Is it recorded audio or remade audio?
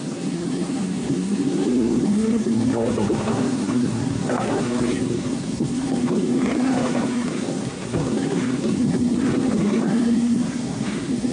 remade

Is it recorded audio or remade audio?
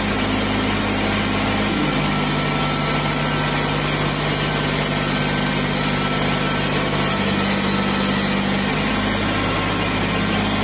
recorded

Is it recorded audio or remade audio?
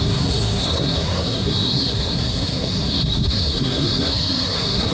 remade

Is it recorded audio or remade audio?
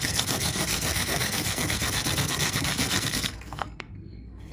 remade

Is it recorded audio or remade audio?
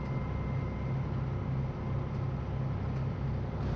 recorded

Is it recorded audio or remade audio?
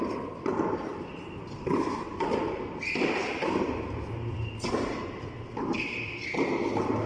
recorded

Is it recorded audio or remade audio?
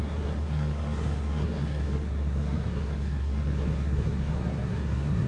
remade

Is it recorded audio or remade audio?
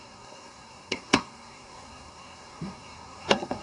remade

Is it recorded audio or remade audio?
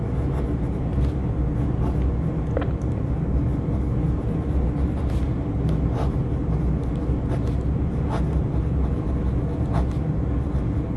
recorded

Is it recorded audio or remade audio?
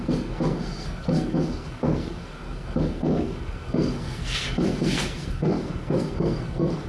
remade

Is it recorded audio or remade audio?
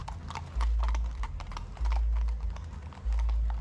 recorded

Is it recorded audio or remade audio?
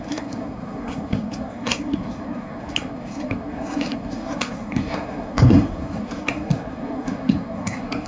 remade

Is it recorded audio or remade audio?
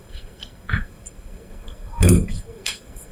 remade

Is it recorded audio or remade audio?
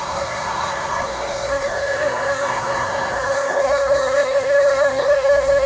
remade